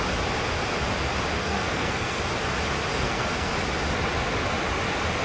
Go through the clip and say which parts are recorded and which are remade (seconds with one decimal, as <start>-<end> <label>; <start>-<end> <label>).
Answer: 0.0-1.4 recorded; 1.4-2.2 remade; 2.2-2.9 recorded; 2.9-3.5 remade; 3.5-5.2 recorded